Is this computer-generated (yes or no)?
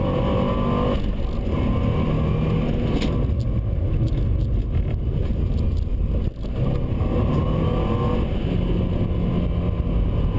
no